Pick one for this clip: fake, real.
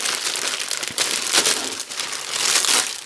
real